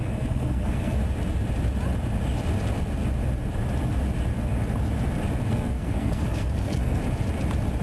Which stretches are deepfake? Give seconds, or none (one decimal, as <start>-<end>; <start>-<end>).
0.0-1.0; 5.5-7.0